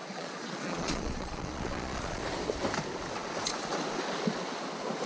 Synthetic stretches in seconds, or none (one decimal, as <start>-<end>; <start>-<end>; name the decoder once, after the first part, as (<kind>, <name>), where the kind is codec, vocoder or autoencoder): 0.0-2.2 (vocoder, Vocos)